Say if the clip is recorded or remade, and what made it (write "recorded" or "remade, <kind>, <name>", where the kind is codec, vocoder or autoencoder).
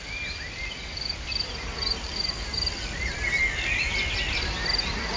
recorded